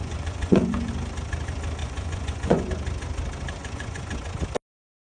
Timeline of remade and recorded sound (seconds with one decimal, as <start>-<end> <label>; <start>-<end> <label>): 0.0-0.9 remade; 0.9-1.8 recorded; 1.8-2.7 remade; 2.7-3.6 recorded; 3.6-4.2 remade; 4.2-5.1 recorded